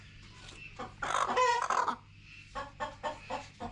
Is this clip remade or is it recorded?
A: recorded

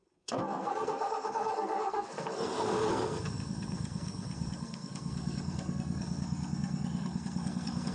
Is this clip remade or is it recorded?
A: remade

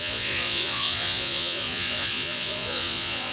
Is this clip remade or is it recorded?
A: remade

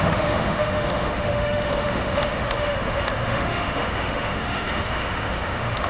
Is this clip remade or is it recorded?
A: remade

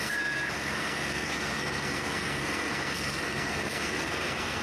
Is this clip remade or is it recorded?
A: remade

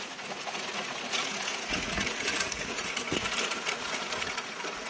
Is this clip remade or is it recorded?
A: remade